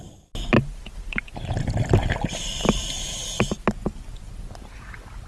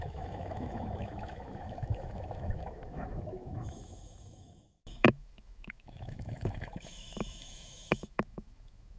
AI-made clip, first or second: second